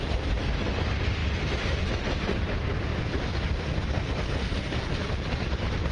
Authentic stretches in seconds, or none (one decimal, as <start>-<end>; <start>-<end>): 0.0-5.9